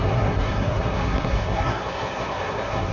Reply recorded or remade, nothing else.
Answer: remade